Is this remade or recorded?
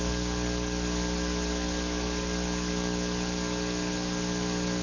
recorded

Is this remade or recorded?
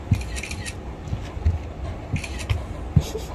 recorded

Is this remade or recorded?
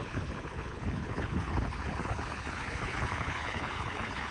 remade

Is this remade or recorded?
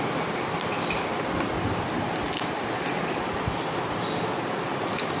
recorded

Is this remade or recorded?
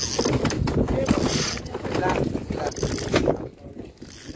recorded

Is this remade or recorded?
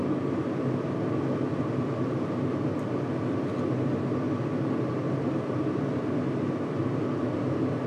recorded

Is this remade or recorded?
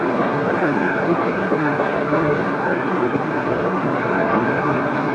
remade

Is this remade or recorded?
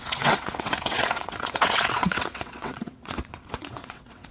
remade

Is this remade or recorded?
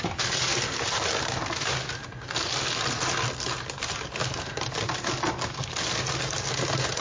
recorded